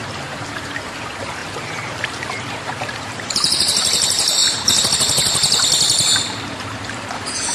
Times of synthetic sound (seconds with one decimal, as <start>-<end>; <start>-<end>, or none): 0.0-4.4; 6.6-7.5